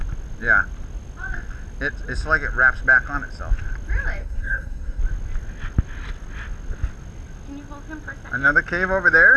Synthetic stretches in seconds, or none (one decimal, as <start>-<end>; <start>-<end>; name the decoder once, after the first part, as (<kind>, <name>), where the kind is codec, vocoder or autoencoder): 4.2-5.0 (codec, SNAC)